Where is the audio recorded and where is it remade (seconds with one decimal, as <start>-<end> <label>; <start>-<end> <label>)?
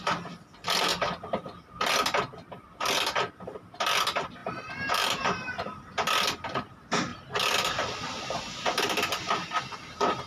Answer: 0.0-4.4 recorded; 4.4-5.3 remade; 5.3-10.3 recorded